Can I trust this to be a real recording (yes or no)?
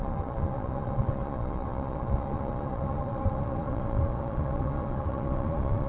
no